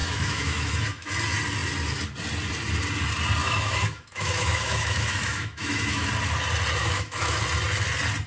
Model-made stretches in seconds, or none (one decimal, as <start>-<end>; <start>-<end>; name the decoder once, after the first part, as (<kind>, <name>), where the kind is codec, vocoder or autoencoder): 0.0-1.1 (autoencoder, DAC-VAE); 3.4-6.1; 6.8-7.4

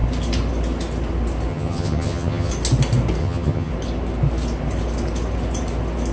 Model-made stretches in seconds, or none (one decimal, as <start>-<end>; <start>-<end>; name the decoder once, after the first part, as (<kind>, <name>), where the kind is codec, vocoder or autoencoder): 1.5-2.5 (vocoder, HiFi-GAN); 3.2-3.7

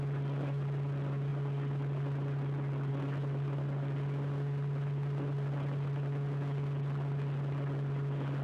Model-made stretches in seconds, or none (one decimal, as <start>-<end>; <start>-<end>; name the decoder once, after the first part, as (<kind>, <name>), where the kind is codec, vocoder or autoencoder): none